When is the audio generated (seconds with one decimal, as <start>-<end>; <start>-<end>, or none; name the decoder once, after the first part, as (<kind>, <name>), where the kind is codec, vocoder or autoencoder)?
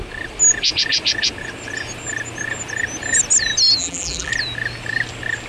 3.8-4.3 (vocoder, BigVGAN v2)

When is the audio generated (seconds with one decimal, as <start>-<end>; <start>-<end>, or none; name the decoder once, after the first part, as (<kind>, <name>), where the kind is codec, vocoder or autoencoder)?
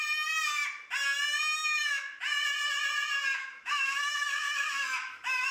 1.6-2.2 (autoencoder, DAC-VAE); 3.4-5.5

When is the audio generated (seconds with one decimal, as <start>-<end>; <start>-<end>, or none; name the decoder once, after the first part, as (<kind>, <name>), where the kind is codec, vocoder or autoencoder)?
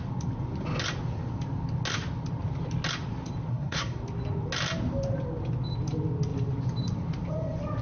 3.5-4.0 (codec, SNAC)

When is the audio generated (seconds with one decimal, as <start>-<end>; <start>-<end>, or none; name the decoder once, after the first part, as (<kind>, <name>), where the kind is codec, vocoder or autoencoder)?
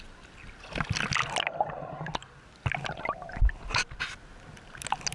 none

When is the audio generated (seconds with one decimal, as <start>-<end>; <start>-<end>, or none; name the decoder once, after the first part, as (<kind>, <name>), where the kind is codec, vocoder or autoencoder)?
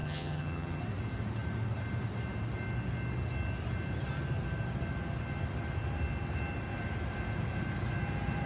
0.0-0.8 (vocoder, HiFi-GAN)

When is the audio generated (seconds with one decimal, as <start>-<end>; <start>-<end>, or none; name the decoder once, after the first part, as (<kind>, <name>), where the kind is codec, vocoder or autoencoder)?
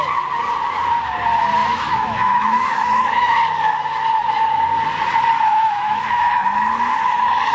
1.6-3.4 (autoencoder, DAC-VAE); 5.5-6.7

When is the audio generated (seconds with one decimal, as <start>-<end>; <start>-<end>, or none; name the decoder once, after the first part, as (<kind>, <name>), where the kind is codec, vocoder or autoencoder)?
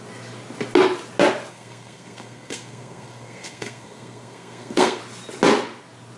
1.5-5.0 (codec, SNAC)